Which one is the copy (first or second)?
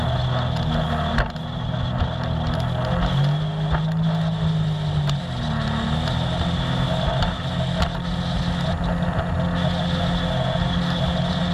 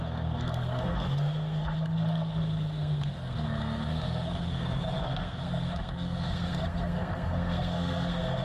second